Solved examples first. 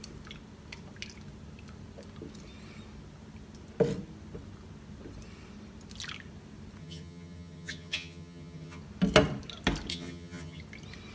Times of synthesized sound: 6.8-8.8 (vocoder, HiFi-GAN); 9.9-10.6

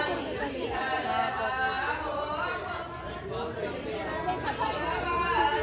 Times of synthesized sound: none

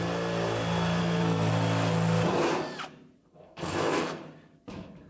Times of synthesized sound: 1.0-1.5 (codec, SNAC); 3.3-4.2

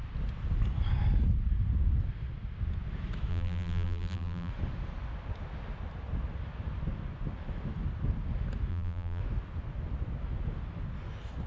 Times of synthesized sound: 3.3-4.5 (vocoder, BigVGAN v2); 8.7-9.2

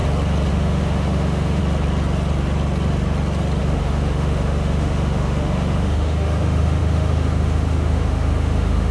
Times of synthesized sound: 0.5-1.6 (autoencoder, DAC-VAE); 3.6-8.9

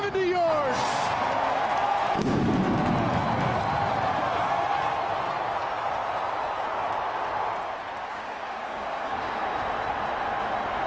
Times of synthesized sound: 8.1-9.4 (codec, DAC)